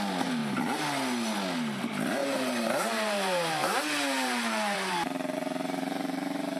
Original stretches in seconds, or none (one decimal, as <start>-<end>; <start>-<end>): 0.0-2.2